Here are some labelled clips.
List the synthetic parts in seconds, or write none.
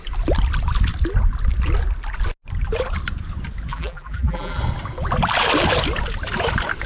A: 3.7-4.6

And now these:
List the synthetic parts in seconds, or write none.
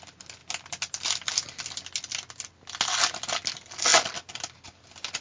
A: none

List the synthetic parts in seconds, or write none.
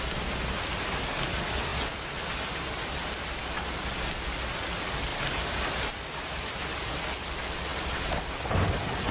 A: 5.1-6.9; 7.7-9.1